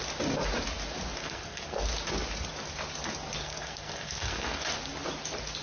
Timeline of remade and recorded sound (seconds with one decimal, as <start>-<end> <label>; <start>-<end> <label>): 0.0-1.2 recorded; 1.2-1.8 remade; 1.8-3.4 recorded; 3.4-4.6 remade; 4.6-5.6 recorded

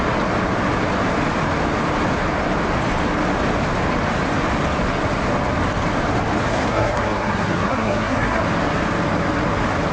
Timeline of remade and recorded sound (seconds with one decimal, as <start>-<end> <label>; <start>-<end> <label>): 0.0-6.5 recorded; 6.5-8.4 remade; 8.4-9.9 recorded

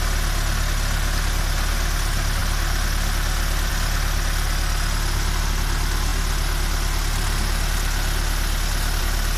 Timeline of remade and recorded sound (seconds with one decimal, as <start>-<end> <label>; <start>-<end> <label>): 0.0-9.4 recorded

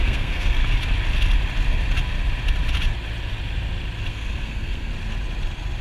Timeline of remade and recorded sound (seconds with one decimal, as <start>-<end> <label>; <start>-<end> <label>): 0.0-0.6 remade; 0.6-4.1 recorded; 4.1-4.9 remade; 4.9-5.8 recorded

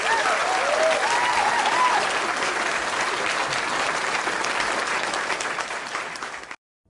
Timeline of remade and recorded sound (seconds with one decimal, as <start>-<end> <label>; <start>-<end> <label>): 0.0-6.9 recorded

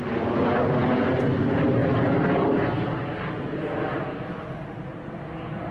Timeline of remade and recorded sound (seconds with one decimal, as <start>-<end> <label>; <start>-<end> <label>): 0.0-5.7 recorded